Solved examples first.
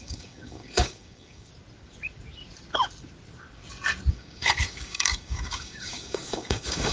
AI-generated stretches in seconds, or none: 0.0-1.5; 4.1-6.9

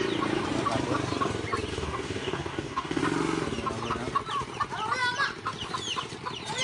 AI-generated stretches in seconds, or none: 1.7-3.0

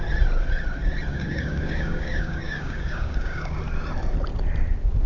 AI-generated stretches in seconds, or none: 1.1-3.6

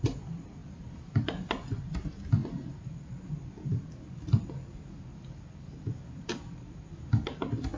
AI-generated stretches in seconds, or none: none

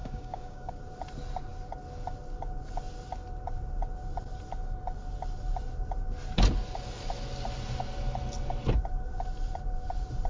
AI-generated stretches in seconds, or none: 0.0-0.7